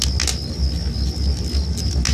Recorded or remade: recorded